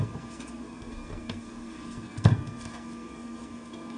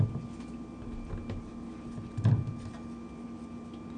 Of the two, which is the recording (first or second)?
second